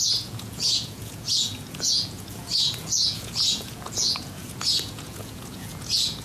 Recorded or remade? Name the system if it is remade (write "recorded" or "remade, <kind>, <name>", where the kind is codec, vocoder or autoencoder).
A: remade, vocoder, Vocos